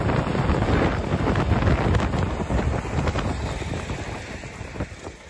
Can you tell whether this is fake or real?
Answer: real